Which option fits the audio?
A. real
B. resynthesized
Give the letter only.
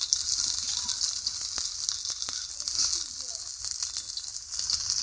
A